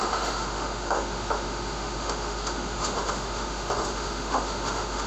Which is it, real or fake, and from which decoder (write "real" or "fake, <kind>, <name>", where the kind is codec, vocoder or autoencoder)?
fake, autoencoder, DAC-VAE